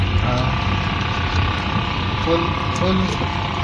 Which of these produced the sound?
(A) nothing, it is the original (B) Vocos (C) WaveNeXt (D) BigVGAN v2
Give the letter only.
A